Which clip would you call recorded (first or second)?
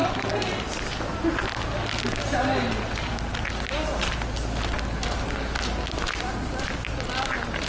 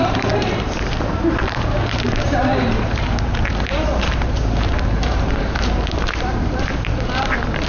first